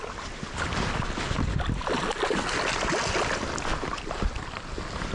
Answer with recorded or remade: recorded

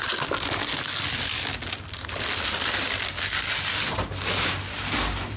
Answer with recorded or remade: recorded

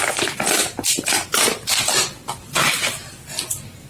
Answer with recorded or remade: recorded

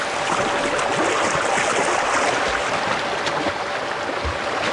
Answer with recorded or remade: recorded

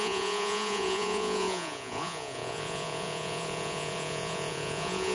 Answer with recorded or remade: remade